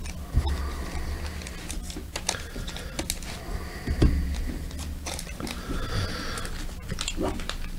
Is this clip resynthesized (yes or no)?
no